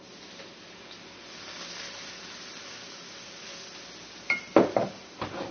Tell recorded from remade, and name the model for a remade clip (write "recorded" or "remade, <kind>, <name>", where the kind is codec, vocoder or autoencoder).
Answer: recorded